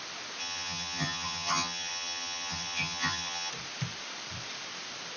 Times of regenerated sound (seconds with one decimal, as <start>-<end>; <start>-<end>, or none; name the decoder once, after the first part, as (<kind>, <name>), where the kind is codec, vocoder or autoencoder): 0.4-3.5 (vocoder, HiFi-GAN)